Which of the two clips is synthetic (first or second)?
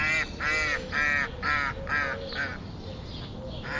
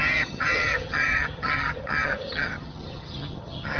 second